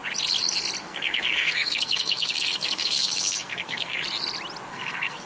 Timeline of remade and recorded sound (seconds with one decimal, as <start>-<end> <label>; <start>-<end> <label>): 0.0-0.8 recorded; 0.8-4.0 remade; 4.0-4.7 recorded; 4.7-5.3 remade